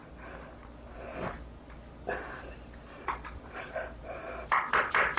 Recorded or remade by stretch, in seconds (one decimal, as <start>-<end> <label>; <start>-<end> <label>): 0.0-5.2 recorded